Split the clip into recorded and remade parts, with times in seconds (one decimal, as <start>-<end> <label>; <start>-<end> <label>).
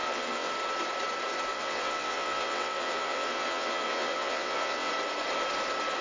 0.0-0.5 remade; 0.5-1.5 recorded; 1.5-4.9 remade; 4.9-6.0 recorded